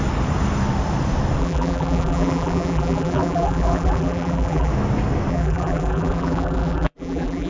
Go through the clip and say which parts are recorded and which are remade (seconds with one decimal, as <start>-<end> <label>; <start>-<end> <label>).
0.0-1.4 recorded; 1.4-4.7 remade; 4.7-5.3 recorded; 5.3-7.5 remade